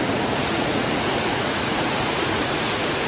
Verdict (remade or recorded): remade